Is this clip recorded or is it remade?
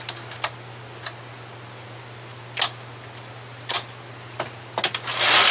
recorded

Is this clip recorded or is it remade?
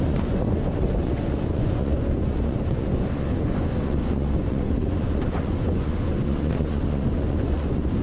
remade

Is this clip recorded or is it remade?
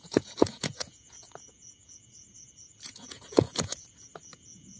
remade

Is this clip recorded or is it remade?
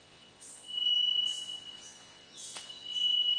remade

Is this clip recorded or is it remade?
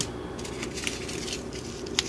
recorded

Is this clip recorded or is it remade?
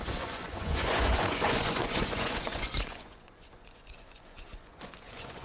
remade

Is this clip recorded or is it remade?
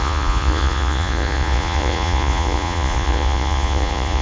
remade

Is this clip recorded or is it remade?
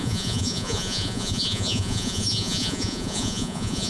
remade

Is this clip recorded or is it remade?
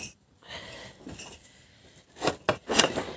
recorded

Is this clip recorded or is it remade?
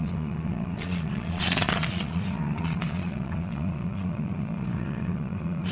remade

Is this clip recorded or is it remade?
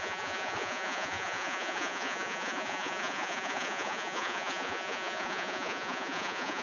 remade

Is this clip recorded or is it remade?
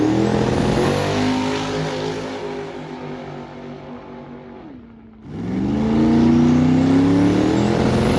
recorded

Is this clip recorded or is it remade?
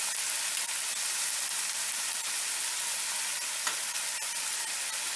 recorded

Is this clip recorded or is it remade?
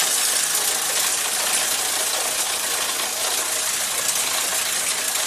recorded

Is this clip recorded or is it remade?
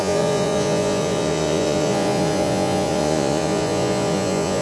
remade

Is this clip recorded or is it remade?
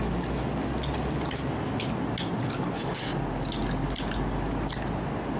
recorded